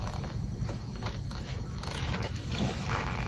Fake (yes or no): yes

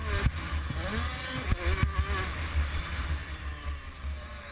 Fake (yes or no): no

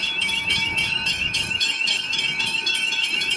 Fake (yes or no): yes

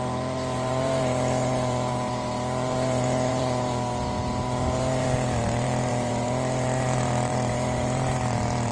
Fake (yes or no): yes